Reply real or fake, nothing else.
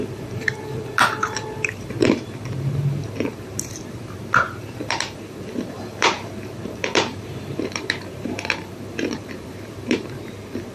fake